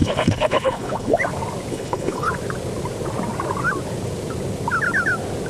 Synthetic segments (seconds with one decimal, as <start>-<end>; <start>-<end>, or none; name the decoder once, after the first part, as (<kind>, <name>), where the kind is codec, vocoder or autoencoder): 0.0-1.2 (codec, HILCodec); 1.7-2.3